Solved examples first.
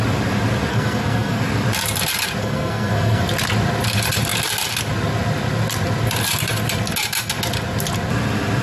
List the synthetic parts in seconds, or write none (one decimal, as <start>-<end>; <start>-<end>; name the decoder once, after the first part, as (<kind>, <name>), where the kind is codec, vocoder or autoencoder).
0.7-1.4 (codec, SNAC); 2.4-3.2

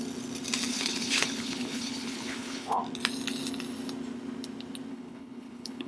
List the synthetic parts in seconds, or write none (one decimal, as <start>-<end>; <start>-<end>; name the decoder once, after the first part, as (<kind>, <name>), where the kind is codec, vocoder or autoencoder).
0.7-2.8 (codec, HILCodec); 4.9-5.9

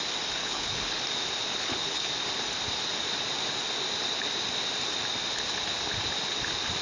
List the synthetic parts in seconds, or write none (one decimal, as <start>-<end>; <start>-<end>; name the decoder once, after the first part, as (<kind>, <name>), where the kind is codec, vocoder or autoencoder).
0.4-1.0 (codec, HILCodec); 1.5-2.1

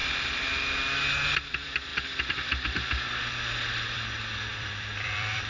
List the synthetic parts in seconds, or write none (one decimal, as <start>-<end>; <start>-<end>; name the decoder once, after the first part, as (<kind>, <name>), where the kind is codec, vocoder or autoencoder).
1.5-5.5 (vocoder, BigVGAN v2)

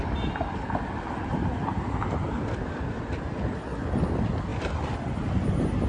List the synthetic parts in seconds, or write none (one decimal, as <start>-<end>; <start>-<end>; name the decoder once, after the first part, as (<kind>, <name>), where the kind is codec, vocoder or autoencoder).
none

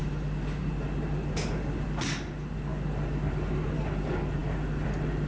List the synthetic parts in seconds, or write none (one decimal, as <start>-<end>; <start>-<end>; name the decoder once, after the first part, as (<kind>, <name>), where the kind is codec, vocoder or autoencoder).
none

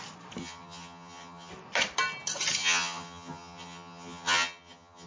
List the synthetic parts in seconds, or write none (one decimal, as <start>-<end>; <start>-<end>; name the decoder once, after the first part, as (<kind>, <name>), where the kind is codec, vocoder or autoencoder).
0.4-1.5 (vocoder, HiFi-GAN); 2.6-5.1

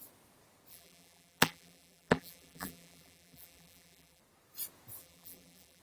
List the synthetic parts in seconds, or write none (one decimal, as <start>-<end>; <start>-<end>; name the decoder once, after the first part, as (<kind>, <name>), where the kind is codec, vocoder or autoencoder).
0.7-4.2 (vocoder, BigVGAN v2); 5.0-5.8